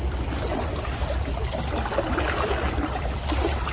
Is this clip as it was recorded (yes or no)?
yes